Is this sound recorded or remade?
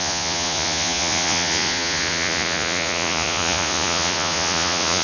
remade